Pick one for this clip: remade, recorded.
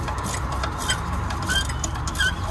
recorded